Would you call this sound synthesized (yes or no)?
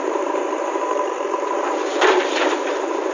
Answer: yes